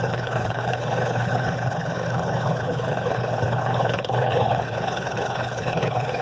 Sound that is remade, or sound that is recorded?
remade